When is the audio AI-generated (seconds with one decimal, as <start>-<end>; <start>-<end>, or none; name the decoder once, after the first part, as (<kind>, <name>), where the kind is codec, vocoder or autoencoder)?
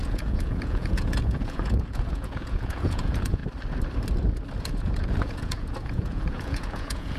0.0-3.4 (vocoder, Vocos); 4.6-7.2